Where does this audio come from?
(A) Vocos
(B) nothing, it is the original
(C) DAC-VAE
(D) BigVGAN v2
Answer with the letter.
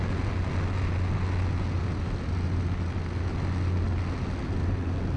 B